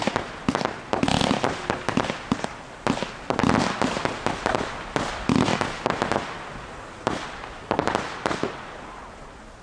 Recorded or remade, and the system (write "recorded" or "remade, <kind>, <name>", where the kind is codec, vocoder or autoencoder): recorded